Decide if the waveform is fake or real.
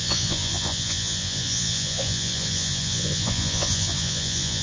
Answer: fake